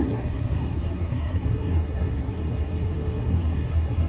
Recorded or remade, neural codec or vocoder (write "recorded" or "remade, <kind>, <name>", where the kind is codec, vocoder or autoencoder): remade, codec, SNAC